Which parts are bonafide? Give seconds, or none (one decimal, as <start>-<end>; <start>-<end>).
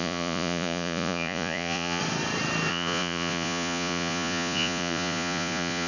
2.0-2.7